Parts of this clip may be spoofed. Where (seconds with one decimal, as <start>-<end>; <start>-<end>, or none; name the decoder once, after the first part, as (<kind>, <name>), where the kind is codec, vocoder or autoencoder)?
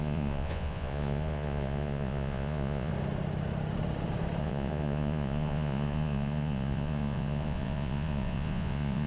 0.0-2.9 (vocoder, Vocos); 4.4-9.1